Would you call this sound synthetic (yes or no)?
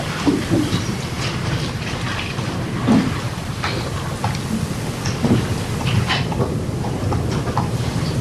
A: no